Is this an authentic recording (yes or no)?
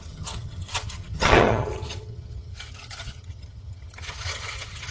no